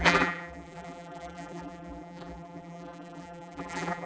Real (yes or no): no